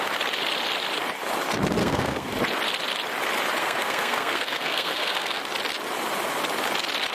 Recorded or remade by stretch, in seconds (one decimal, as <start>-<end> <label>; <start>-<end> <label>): 0.0-1.8 recorded; 1.8-2.3 remade; 2.3-3.6 recorded; 3.6-5.4 remade; 5.4-7.1 recorded